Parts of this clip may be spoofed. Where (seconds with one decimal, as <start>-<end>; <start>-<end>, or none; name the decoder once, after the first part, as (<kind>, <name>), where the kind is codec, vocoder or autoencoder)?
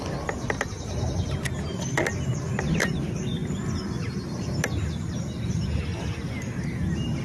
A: none